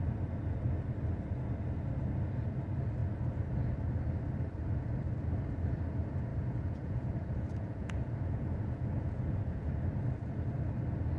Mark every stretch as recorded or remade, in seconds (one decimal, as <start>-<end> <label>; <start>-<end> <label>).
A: 0.0-6.3 recorded; 6.3-9.7 remade; 9.7-11.2 recorded